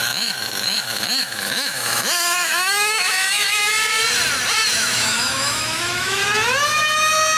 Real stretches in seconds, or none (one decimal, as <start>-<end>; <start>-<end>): 4.0-4.7; 6.2-7.4